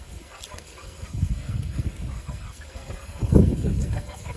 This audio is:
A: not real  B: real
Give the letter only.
A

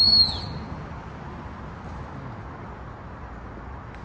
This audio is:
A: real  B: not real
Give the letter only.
A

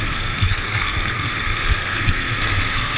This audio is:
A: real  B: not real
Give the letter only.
B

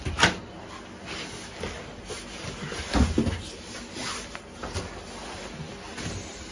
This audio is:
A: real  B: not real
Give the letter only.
A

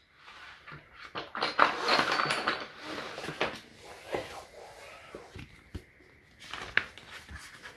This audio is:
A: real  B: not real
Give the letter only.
A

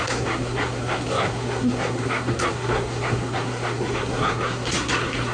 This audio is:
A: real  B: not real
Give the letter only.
B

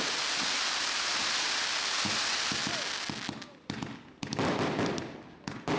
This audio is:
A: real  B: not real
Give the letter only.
A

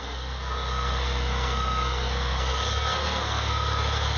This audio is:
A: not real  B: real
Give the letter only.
A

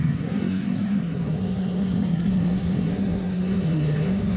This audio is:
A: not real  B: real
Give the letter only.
A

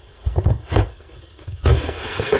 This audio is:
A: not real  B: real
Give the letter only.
A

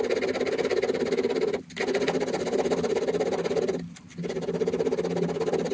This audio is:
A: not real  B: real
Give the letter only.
B